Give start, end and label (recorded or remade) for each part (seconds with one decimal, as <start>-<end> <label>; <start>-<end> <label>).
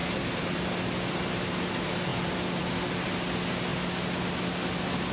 0.0-5.1 recorded